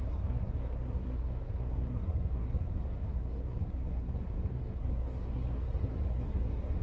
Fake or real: fake